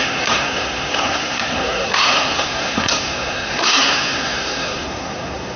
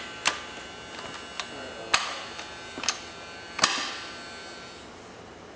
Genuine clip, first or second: second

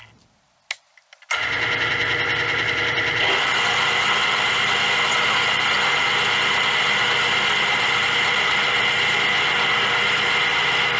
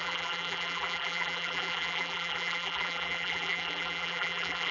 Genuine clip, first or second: first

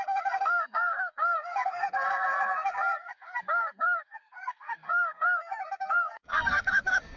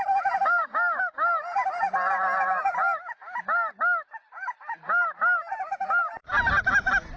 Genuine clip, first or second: second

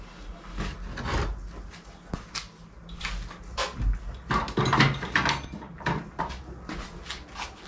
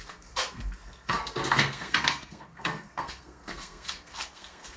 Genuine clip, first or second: first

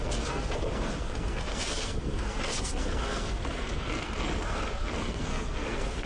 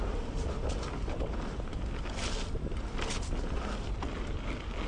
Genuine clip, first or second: second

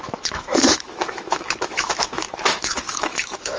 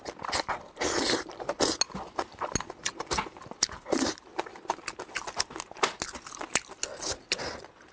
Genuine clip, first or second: second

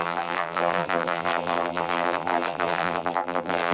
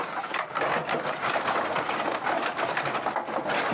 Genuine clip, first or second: second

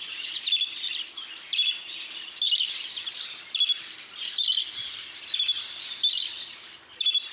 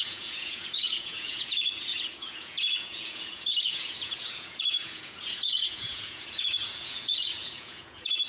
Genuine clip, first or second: first